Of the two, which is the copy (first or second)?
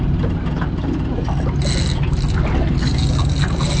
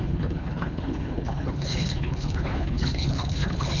second